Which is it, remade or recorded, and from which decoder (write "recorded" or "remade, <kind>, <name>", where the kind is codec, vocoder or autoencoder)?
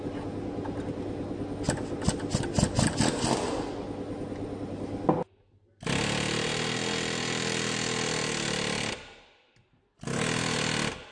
recorded